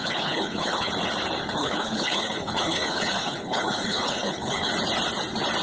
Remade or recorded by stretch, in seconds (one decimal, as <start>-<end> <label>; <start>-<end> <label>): 0.0-0.9 remade; 0.9-1.6 recorded; 1.6-4.7 remade; 4.7-5.6 recorded

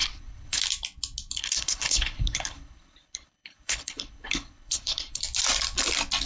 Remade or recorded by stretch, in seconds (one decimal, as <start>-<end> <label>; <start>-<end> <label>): 0.0-0.6 remade; 0.6-1.4 recorded; 1.4-5.2 remade; 5.2-6.3 recorded

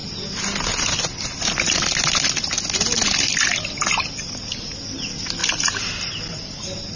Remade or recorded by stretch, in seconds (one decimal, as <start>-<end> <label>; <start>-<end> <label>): 0.0-7.0 recorded

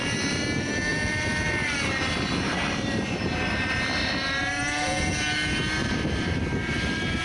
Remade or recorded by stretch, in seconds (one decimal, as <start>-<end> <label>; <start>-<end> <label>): 0.0-0.9 recorded; 0.9-4.6 remade; 4.6-5.8 recorded; 5.8-7.2 remade

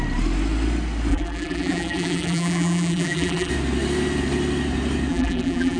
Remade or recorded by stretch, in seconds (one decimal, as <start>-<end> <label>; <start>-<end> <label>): 0.0-1.1 recorded; 1.1-3.5 remade; 3.5-5.1 recorded; 5.1-5.8 remade

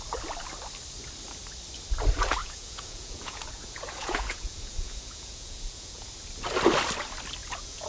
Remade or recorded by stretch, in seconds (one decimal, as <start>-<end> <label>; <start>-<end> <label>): 0.0-2.4 recorded; 2.4-6.1 remade; 6.1-7.4 recorded; 7.4-7.9 remade

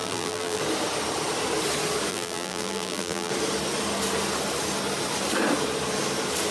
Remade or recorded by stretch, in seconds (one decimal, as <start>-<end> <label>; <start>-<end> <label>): 0.0-0.6 remade; 0.6-2.1 recorded; 2.1-3.3 remade; 3.3-6.5 recorded